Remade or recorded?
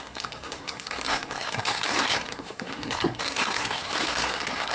remade